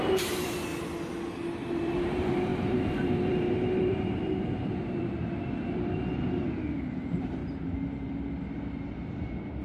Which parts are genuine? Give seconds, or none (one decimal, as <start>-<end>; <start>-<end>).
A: 0.7-1.7; 7.4-9.1

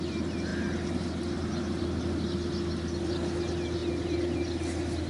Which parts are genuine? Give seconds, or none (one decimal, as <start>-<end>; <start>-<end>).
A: 0.0-5.1